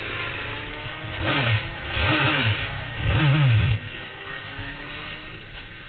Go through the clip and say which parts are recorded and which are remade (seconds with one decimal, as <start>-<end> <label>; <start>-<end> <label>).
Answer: 0.0-0.7 recorded; 0.7-3.2 remade; 3.2-3.6 recorded; 3.6-5.9 remade